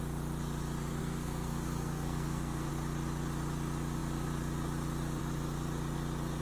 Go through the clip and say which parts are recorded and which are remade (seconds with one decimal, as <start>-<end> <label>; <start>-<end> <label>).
0.0-1.0 recorded; 1.0-2.7 remade; 2.7-6.4 recorded